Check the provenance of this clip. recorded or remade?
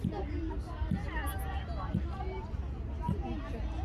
recorded